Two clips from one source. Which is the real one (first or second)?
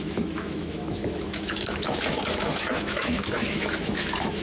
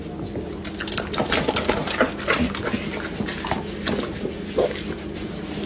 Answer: second